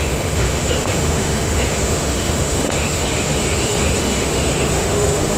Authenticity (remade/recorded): remade